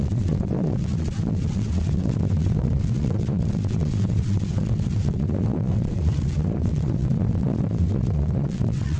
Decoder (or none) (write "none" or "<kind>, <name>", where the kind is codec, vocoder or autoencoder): vocoder, WaveNeXt